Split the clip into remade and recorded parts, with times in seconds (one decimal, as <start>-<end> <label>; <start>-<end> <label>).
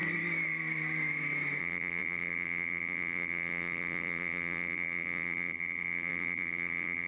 0.0-1.6 recorded; 1.6-7.1 remade